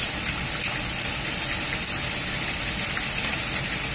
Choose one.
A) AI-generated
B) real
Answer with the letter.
B